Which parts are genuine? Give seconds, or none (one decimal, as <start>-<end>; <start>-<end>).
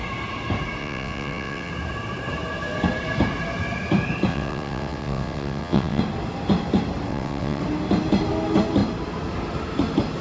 0.0-0.8; 1.7-4.3; 6.0-7.1; 7.6-10.2